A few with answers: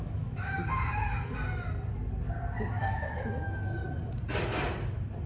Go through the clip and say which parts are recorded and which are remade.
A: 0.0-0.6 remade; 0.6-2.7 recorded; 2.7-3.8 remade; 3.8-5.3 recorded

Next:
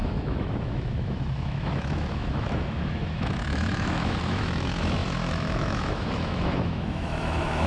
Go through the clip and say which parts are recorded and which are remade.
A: 0.0-7.7 remade

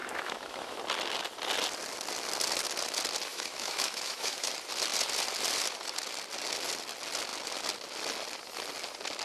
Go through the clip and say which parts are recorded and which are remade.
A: 0.0-0.8 remade; 0.8-3.3 recorded; 3.3-4.5 remade; 4.5-9.2 recorded

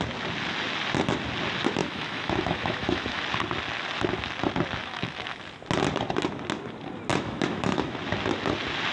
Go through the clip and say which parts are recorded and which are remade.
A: 0.0-1.8 recorded; 1.8-3.2 remade; 3.2-4.8 recorded; 4.8-5.4 remade; 5.4-7.1 recorded; 7.1-8.0 remade; 8.0-8.9 recorded

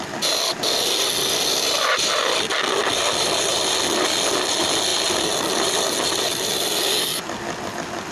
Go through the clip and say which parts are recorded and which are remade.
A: 0.0-8.1 recorded

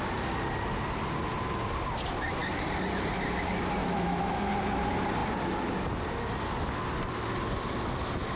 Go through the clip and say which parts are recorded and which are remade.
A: 0.0-3.8 recorded; 3.8-4.5 remade; 4.5-8.4 recorded

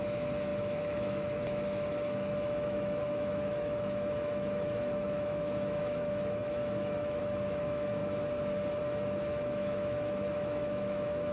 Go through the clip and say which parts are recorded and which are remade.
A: 0.0-8.0 remade; 8.0-8.8 recorded; 8.8-11.3 remade

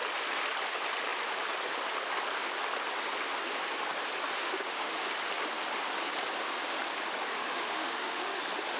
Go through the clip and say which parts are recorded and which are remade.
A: 0.0-4.4 recorded; 4.4-5.1 remade; 5.1-7.3 recorded; 7.3-8.4 remade; 8.4-8.8 recorded